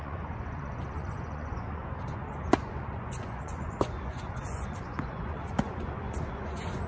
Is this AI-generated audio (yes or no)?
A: yes